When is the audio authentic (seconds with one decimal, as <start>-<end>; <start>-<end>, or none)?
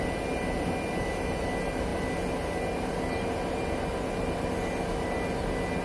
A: 0.0-5.8